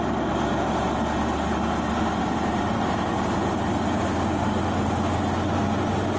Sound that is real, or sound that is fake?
real